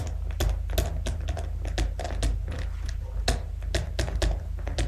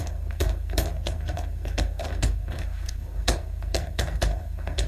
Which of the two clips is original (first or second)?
first